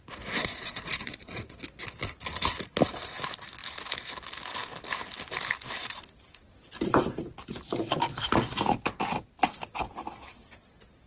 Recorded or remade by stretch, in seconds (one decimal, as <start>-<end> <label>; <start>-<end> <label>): 0.0-0.4 recorded; 0.4-1.6 remade; 1.6-11.1 recorded